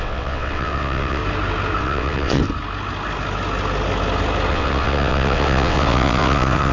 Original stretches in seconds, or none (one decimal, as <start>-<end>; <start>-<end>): 1.2-1.8; 2.4-4.5